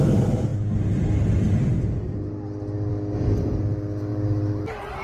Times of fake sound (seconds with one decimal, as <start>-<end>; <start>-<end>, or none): none